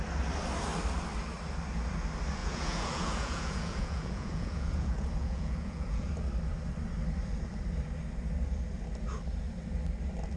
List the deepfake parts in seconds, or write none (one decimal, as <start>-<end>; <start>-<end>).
2.4-6.1